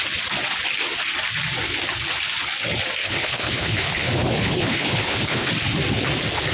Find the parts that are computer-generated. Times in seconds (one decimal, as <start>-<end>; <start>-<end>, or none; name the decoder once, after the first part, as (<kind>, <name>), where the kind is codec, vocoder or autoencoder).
3.0-5.5 (codec, HILCodec)